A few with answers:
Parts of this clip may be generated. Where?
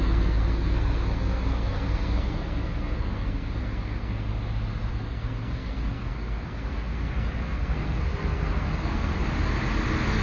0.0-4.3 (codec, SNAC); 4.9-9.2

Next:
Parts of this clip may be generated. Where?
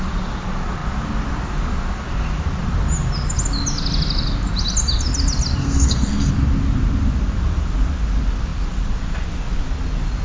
5.6-6.3 (codec, SNAC)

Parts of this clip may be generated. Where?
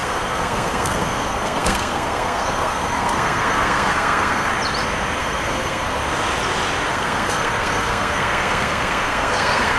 0.0-4.5 (codec, SNAC); 5.2-6.0; 6.9-9.8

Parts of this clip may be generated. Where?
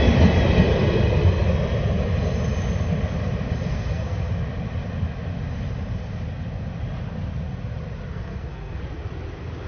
3.7-4.3 (codec, SNAC); 8.1-8.8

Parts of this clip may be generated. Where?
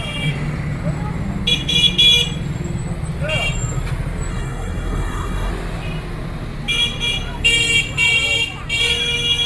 4.3-5.5 (codec, SNAC)